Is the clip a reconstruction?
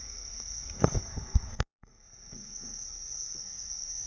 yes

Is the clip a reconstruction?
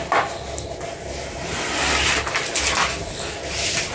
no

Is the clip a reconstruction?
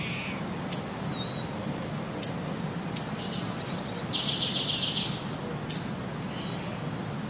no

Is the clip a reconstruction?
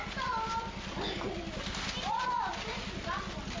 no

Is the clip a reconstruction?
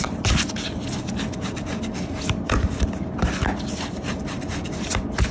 no